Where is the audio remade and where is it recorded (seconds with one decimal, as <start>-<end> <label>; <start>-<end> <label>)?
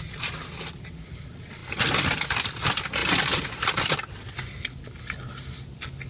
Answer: 0.0-6.1 recorded